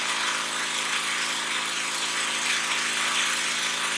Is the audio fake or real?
real